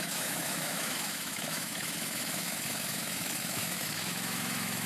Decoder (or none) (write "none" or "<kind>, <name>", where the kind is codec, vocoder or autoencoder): autoencoder, DAC-VAE